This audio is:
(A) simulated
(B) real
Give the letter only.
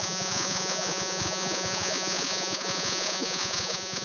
A